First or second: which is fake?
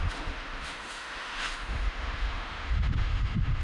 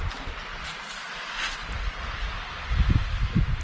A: first